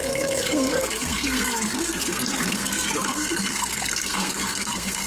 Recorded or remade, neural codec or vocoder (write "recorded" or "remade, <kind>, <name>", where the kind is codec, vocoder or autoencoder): remade, codec, SNAC